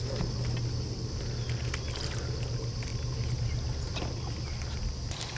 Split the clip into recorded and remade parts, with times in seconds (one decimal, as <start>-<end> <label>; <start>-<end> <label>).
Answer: 0.0-5.4 recorded